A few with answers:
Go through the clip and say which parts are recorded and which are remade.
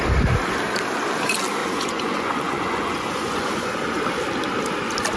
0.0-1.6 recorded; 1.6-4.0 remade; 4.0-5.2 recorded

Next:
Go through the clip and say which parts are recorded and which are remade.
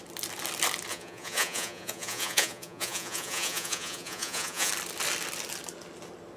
0.0-0.9 recorded; 0.9-4.7 remade; 4.7-6.4 recorded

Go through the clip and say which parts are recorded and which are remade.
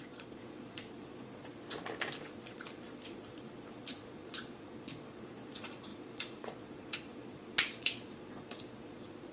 0.0-1.5 remade; 1.5-2.2 recorded; 2.2-9.3 remade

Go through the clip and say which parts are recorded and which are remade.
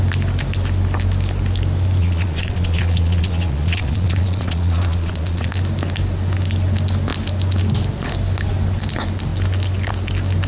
0.0-2.0 recorded; 2.0-5.5 remade; 5.5-10.5 recorded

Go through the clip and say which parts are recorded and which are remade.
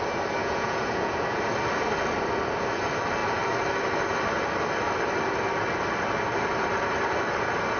0.0-0.4 recorded; 0.4-1.4 remade; 1.4-7.8 recorded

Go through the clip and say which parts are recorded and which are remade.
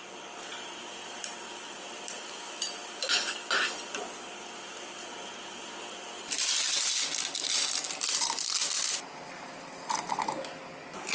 0.0-11.1 recorded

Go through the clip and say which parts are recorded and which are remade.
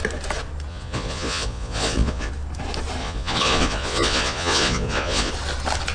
0.0-0.7 recorded; 0.7-2.3 remade; 2.3-3.0 recorded; 3.0-5.3 remade; 5.3-5.9 recorded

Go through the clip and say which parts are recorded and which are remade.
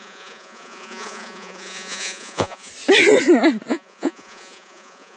0.0-2.7 remade; 2.7-3.7 recorded; 3.7-5.2 remade